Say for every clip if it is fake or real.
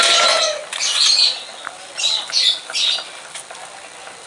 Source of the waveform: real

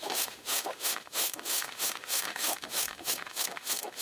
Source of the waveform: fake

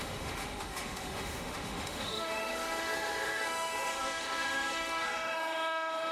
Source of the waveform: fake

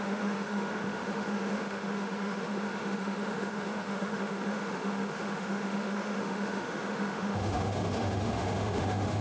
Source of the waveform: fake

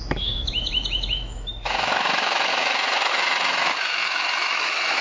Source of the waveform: fake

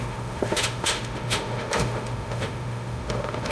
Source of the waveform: fake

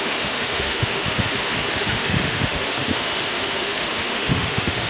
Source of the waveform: fake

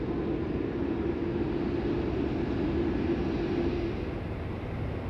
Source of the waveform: real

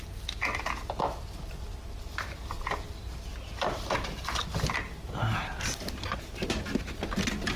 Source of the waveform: real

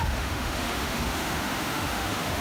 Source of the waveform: fake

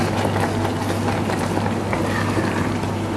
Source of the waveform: real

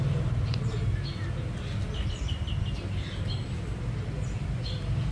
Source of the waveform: real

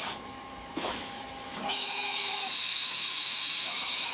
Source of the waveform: fake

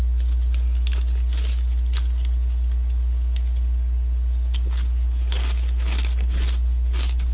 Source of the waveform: real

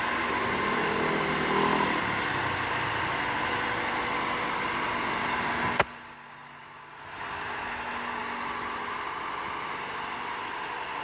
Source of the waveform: real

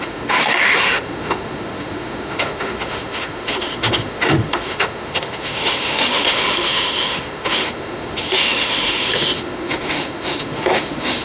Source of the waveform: fake